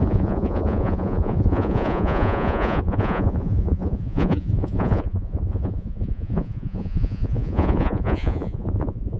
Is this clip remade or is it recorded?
remade